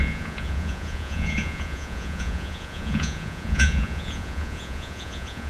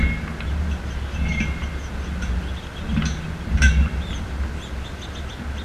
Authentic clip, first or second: second